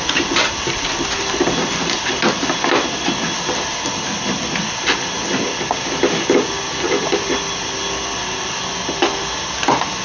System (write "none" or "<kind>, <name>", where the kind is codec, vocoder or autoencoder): none